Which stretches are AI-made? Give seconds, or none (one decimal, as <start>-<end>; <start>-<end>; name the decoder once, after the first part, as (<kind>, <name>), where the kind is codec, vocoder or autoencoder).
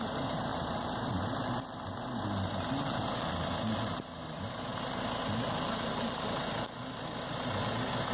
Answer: 0.5-1.2 (vocoder, BigVGAN v2)